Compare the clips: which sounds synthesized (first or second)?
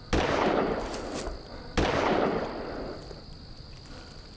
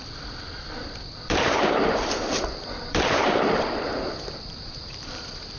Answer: second